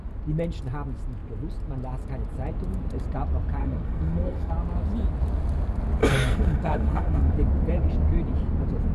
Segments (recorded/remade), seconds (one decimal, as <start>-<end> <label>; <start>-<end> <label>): 0.0-3.6 recorded; 3.6-4.5 remade; 4.5-6.0 recorded; 6.0-7.3 remade; 7.3-8.9 recorded